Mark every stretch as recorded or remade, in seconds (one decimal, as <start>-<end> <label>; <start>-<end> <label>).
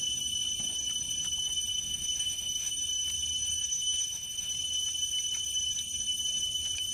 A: 0.0-1.7 recorded; 1.7-2.7 remade; 2.7-3.6 recorded; 3.6-4.5 remade; 4.5-6.9 recorded